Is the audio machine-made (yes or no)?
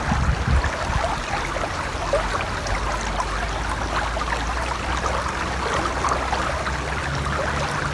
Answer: no